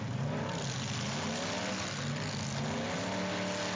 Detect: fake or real real